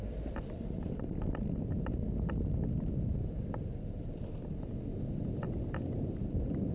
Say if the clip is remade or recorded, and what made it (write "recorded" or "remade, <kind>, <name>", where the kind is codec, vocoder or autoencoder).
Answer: remade, vocoder, BigVGAN v2